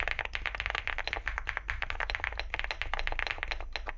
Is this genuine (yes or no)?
yes